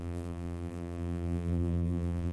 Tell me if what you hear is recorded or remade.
remade